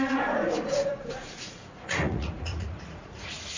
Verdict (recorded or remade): remade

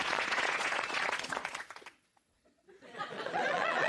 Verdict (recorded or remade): remade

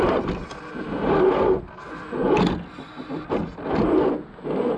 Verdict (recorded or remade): recorded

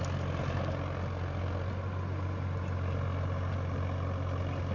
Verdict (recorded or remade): recorded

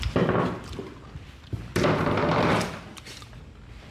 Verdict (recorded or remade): recorded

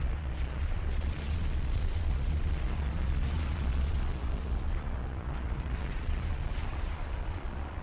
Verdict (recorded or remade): remade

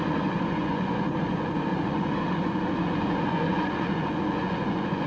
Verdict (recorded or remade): remade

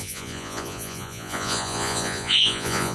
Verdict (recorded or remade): remade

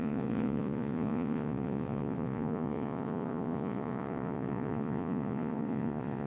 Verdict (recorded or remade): remade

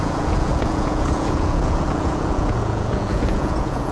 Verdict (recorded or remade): remade